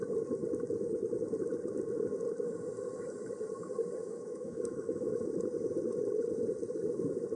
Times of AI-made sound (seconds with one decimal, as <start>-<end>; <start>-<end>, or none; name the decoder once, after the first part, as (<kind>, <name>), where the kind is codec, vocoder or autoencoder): 4.0-5.3 (autoencoder, DAC-VAE)